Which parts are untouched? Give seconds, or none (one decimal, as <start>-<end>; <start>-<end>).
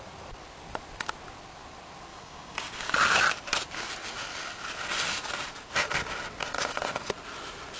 0.0-2.1; 2.9-7.8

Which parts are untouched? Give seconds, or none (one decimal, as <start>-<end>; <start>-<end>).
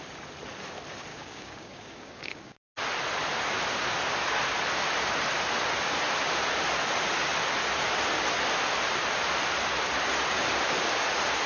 0.0-1.1; 2.7-11.5